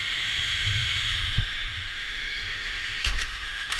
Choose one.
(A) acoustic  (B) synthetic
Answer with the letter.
B